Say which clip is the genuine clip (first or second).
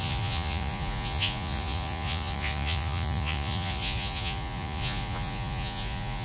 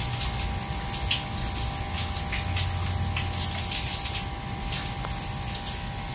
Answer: second